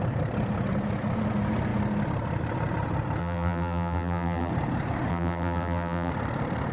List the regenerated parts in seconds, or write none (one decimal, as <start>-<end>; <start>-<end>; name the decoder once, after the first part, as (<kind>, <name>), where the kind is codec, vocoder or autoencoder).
3.2-4.5 (vocoder, BigVGAN v2); 5.1-6.1

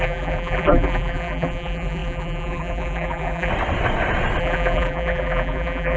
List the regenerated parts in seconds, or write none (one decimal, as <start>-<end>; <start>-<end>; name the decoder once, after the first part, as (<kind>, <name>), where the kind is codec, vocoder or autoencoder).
0.0-3.5 (vocoder, BigVGAN v2); 4.4-6.0

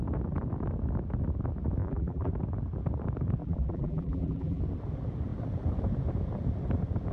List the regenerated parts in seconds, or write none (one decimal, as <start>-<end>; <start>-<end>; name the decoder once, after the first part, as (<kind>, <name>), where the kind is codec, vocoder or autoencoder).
1.8-2.3 (vocoder, BigVGAN v2); 3.4-4.6

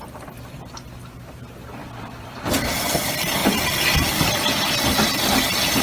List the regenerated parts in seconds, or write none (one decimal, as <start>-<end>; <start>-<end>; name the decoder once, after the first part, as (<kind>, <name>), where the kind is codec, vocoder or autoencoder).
1.8-2.4 (vocoder, BigVGAN v2)

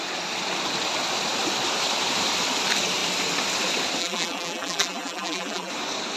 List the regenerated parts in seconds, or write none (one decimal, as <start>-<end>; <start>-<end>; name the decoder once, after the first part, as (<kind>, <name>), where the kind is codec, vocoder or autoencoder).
4.0-5.7 (vocoder, BigVGAN v2)

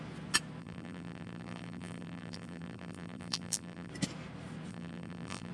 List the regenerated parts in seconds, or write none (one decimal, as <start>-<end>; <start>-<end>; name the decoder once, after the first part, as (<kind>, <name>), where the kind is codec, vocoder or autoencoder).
0.6-3.9 (vocoder, BigVGAN v2); 4.7-5.5

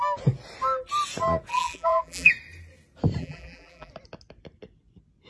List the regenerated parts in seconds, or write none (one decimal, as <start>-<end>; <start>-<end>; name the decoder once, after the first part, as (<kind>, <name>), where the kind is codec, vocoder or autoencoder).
1.5-2.3 (vocoder, BigVGAN v2); 3.2-3.9

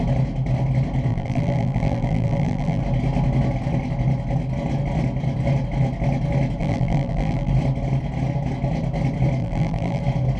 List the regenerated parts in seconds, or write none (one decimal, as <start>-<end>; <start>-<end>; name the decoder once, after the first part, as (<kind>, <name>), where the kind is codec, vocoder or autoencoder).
1.1-2.8 (vocoder, BigVGAN v2); 6.6-7.5; 9.4-10.0